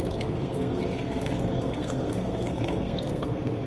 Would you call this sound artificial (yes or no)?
yes